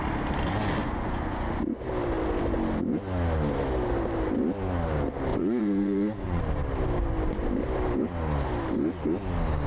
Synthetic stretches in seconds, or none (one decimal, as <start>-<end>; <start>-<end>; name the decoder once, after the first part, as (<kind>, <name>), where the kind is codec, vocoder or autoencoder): 0.8-1.8 (vocoder, Vocos); 5.3-6.4